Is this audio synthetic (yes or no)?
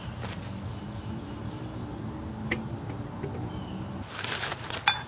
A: no